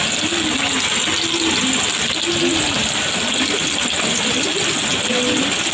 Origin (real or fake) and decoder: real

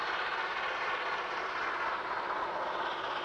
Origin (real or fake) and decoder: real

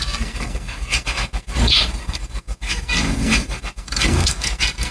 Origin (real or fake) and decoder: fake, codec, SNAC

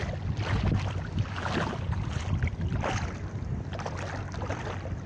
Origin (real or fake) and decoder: real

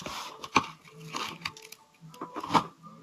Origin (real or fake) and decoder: real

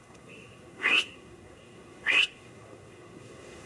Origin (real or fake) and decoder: fake, codec, SNAC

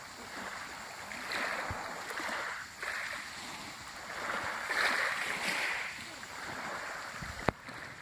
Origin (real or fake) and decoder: real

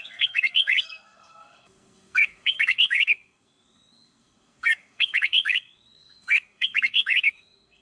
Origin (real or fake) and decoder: fake, codec, SNAC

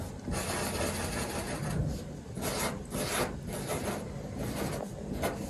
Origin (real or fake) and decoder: real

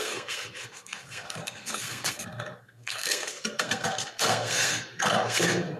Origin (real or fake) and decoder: fake, codec, SNAC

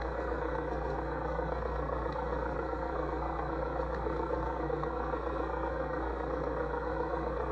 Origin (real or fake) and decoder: fake, codec, SNAC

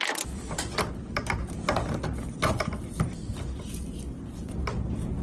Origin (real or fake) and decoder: real